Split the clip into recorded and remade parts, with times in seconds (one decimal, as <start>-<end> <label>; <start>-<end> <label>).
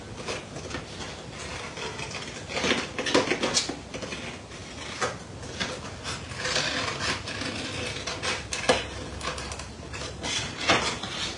0.0-11.4 recorded